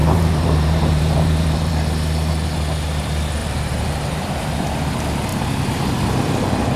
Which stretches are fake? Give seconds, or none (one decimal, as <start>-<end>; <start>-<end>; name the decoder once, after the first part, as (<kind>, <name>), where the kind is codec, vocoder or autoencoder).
0.0-1.7 (vocoder, BigVGAN v2); 3.4-4.4